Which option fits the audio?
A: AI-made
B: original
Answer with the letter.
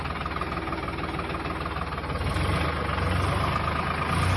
B